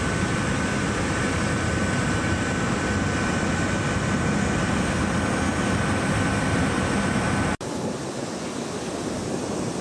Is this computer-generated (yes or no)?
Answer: no